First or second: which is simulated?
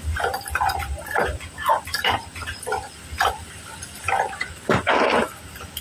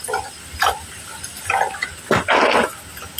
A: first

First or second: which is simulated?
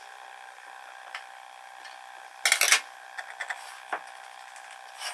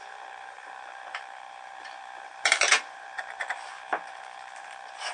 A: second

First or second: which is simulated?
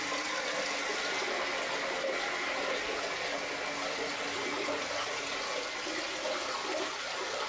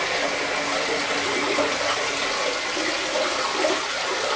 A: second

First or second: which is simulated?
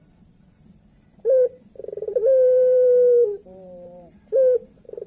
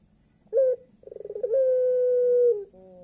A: first